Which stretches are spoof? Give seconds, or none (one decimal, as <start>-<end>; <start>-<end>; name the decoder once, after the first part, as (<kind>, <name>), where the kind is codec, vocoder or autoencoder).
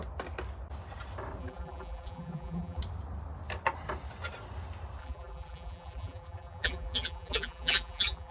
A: 1.4-2.8 (vocoder, BigVGAN v2); 5.0-8.3